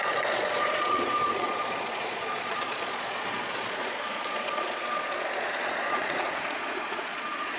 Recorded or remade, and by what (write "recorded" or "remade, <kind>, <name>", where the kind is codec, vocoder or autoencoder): remade, vocoder, Vocos